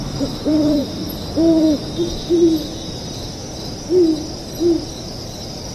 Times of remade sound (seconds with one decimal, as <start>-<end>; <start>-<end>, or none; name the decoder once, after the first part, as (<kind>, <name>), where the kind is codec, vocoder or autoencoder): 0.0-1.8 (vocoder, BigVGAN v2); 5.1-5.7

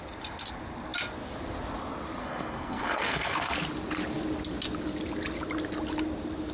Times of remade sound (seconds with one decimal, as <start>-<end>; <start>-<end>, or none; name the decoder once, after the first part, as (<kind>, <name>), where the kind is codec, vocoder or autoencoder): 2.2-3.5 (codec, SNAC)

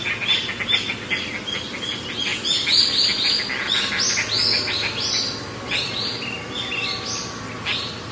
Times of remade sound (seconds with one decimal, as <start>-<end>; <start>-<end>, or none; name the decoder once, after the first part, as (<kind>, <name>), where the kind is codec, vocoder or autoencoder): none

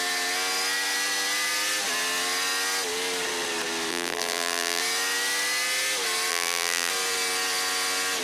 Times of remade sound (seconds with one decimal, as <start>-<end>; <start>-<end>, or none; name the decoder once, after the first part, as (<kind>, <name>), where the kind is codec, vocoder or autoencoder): 3.9-4.8 (vocoder, BigVGAN v2); 6.3-6.9